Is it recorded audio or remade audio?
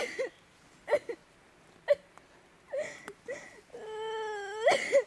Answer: recorded